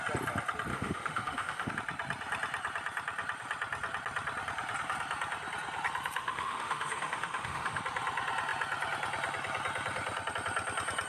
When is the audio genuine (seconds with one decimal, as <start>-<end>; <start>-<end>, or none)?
0.0-0.7; 1.7-6.2; 7.8-11.1